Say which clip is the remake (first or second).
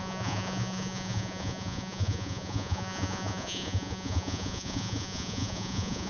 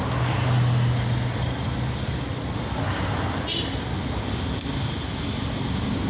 first